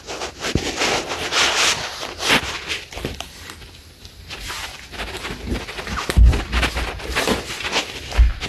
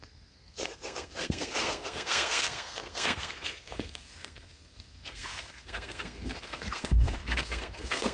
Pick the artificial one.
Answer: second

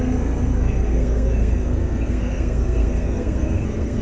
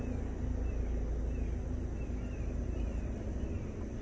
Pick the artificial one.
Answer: first